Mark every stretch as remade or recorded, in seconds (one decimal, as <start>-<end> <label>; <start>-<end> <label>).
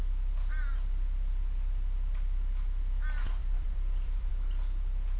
0.0-3.4 recorded; 3.4-4.3 remade; 4.3-5.2 recorded